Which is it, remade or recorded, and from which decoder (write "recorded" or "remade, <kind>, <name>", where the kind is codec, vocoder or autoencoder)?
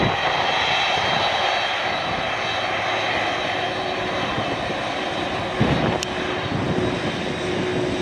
recorded